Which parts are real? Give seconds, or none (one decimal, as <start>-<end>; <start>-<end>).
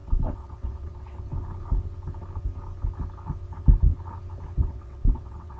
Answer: 1.3-4.6